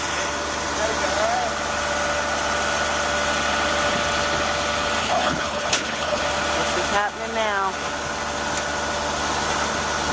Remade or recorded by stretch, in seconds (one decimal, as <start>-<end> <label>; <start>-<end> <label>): 0.0-5.0 recorded; 5.0-6.2 remade; 6.2-10.1 recorded